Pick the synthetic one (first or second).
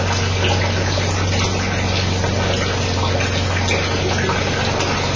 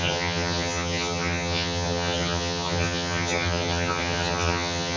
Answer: second